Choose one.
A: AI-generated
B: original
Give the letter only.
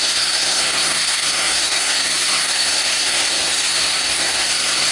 A